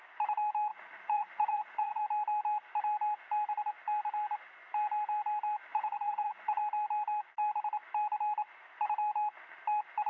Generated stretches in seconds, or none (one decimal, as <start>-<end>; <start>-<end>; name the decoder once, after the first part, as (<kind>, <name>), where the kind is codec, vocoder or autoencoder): 0.7-2.0 (vocoder, Vocos); 5.7-6.6